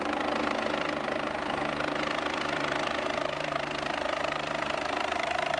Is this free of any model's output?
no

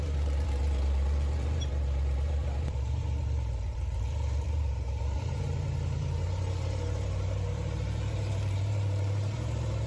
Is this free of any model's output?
no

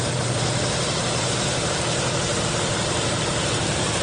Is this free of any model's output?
no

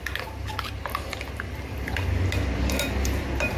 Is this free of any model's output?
yes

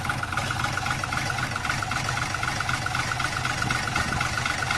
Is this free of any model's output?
yes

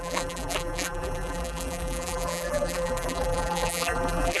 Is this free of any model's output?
no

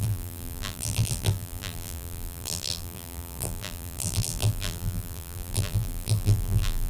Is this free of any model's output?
no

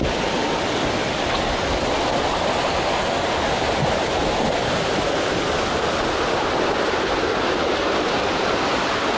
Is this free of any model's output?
yes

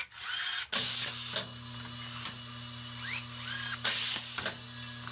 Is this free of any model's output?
yes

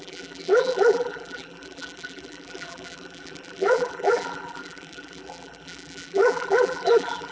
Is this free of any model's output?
no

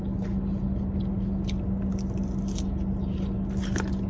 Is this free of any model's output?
yes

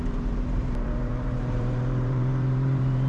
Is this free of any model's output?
no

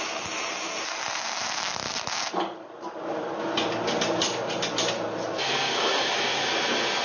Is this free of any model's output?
yes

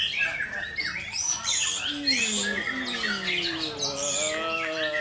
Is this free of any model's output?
yes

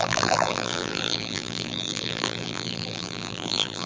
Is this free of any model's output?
no